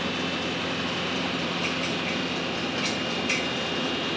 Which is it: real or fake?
real